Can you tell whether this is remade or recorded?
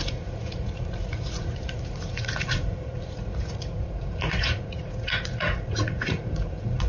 remade